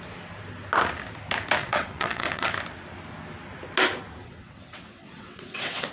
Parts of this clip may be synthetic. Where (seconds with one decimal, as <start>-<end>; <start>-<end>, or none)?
1.6-2.5; 4.2-5.9